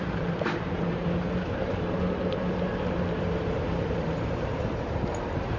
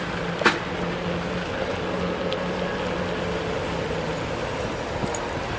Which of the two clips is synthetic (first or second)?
first